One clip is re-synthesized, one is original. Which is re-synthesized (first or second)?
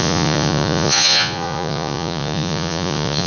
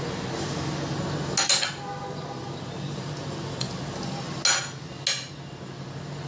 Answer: first